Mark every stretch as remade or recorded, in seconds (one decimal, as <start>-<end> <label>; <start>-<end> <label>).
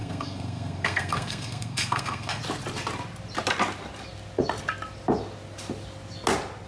0.0-2.4 remade; 2.4-6.7 recorded